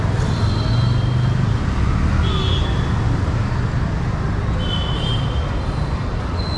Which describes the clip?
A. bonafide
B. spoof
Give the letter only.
A